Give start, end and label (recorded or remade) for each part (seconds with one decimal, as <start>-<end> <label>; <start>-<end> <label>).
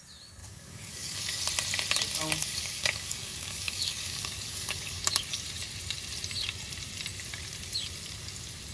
0.0-0.4 recorded; 0.4-1.4 remade; 1.4-2.4 recorded; 2.4-5.0 remade; 5.0-8.7 recorded